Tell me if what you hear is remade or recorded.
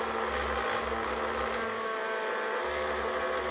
recorded